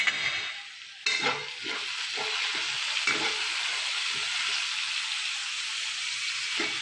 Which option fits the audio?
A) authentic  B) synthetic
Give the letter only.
A